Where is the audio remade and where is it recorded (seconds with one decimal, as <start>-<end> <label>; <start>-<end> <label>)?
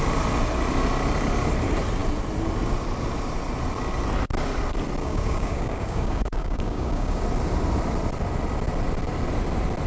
0.0-5.0 recorded; 5.0-7.2 remade; 7.2-9.9 recorded